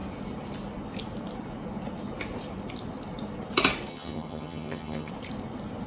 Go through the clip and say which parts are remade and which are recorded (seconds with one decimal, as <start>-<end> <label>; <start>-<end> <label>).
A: 0.0-3.9 recorded; 3.9-5.1 remade; 5.1-5.9 recorded